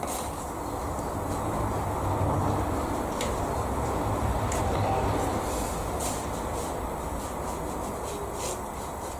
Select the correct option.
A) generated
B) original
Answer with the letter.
B